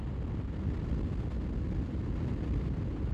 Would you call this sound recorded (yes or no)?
yes